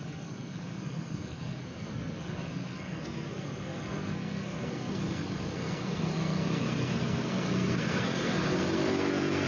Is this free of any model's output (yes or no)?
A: no